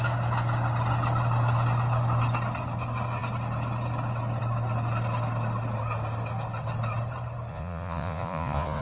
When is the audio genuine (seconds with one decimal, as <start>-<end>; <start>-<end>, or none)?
0.0-7.5